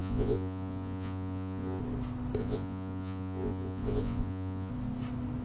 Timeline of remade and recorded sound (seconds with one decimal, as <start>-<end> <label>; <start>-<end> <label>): 0.0-1.8 remade; 1.8-2.4 recorded; 2.4-4.7 remade; 4.7-5.4 recorded